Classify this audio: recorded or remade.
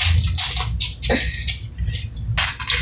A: recorded